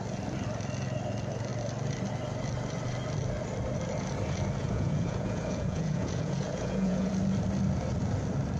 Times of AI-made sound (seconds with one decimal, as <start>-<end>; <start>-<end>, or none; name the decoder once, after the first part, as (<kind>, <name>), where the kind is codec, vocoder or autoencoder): 4.6-7.1 (vocoder, Vocos)